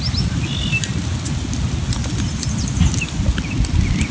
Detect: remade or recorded recorded